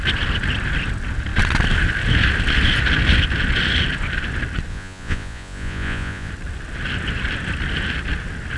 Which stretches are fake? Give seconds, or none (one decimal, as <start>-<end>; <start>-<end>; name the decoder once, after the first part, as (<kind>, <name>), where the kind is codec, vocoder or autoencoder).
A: 4.7-6.3 (vocoder, Vocos)